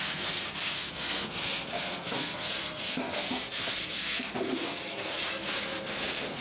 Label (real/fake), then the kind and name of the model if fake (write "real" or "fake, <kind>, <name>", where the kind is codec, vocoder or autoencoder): fake, codec, SNAC